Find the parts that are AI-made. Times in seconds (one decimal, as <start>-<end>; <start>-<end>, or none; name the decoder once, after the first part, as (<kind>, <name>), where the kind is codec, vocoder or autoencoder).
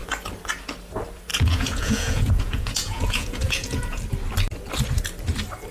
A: 1.3-4.0 (vocoder, Vocos)